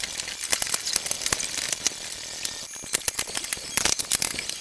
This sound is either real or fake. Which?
real